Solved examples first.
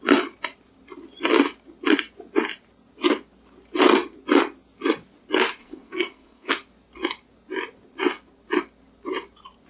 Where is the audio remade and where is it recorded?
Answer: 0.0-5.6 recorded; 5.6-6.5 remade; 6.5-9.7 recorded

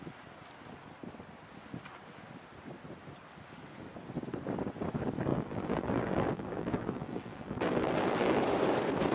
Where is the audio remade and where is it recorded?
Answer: 0.0-5.3 recorded; 5.3-8.4 remade; 8.4-9.1 recorded

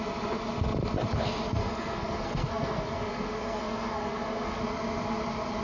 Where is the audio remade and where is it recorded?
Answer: 0.0-1.6 recorded; 1.6-4.6 remade; 4.6-5.6 recorded

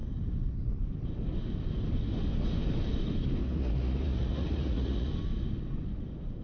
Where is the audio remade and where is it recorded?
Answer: 0.0-3.4 recorded; 3.4-5.1 remade; 5.1-6.4 recorded